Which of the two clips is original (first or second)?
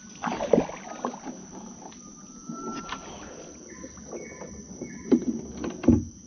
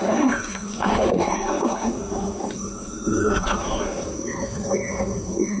first